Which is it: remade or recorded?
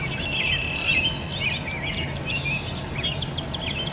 recorded